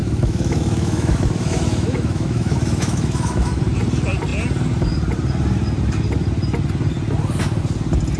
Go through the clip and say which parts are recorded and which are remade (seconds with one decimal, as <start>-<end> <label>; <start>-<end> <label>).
0.0-3.6 remade; 3.6-8.2 recorded